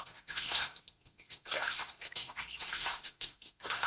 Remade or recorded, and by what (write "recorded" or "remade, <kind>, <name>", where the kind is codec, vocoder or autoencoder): remade, codec, SNAC